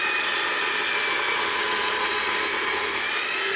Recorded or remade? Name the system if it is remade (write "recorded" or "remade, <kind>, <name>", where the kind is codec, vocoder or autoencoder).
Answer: recorded